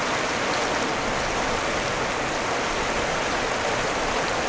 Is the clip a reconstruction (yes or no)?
no